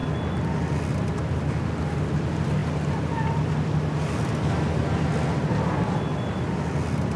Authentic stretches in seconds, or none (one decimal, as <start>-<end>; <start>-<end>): 0.0-7.2